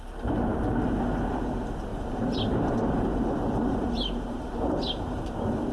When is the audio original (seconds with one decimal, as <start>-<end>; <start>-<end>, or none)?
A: 0.0-1.9; 5.3-5.7